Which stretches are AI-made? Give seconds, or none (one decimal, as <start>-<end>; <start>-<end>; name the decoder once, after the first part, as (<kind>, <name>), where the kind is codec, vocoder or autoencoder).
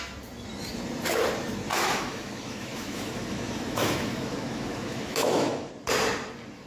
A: 1.7-5.7 (autoencoder, DAC-VAE)